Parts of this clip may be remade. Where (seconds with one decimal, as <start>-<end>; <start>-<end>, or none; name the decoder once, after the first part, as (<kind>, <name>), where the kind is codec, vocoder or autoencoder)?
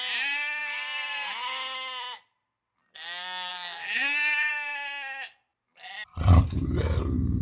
3.5-4.5 (codec, SNAC)